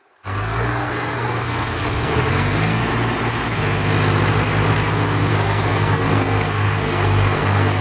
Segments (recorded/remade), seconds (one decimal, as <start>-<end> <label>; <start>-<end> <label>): 0.0-2.8 remade; 2.8-5.3 recorded; 5.3-7.8 remade

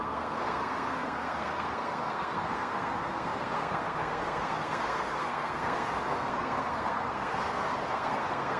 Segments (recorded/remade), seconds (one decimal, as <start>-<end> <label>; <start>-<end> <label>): 0.0-8.6 remade

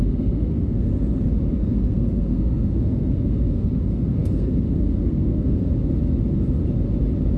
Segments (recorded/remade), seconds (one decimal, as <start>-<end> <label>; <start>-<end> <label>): 0.0-0.9 remade; 0.9-1.6 recorded; 1.6-5.7 remade; 5.7-7.4 recorded

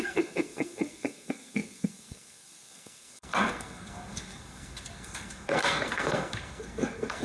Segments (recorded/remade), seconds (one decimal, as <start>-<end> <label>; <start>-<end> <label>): 0.0-7.2 remade

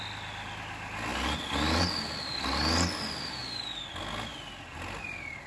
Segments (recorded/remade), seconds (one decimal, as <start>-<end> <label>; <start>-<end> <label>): 0.0-5.5 recorded

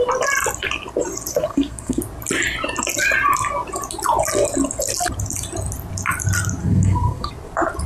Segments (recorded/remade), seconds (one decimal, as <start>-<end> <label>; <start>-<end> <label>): 0.0-1.3 recorded; 1.3-2.0 remade; 2.0-6.6 recorded; 6.6-7.3 remade; 7.3-7.9 recorded